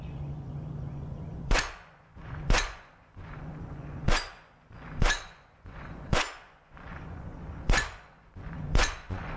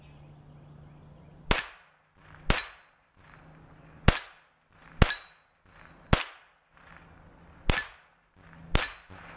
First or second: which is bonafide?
second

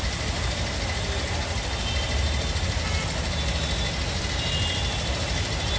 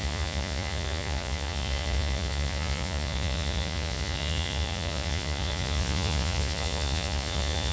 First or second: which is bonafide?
first